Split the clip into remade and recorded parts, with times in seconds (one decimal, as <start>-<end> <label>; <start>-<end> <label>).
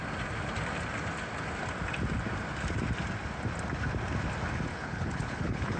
0.0-4.7 recorded; 4.7-5.8 remade